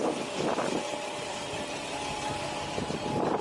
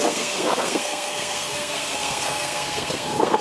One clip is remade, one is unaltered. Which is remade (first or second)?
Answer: second